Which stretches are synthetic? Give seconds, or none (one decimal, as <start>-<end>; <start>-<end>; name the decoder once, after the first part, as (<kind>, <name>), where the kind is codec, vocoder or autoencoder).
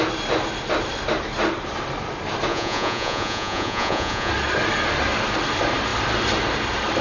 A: 2.5-4.3 (vocoder, Vocos)